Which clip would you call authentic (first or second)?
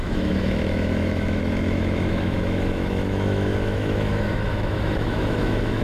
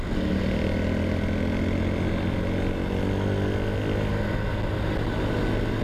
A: second